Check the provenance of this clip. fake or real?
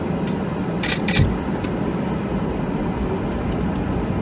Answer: real